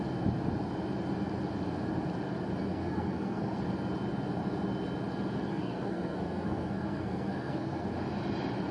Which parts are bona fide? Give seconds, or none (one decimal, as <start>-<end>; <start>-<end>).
0.0-2.7; 3.6-5.5; 7.9-8.7